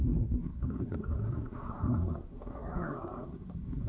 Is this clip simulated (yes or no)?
yes